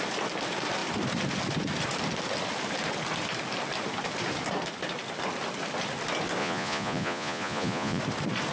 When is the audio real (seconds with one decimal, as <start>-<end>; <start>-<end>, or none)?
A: 0.0-6.4; 8.0-8.5